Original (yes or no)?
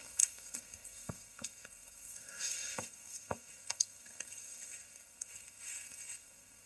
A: no